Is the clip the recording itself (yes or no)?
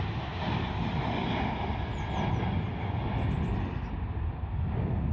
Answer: yes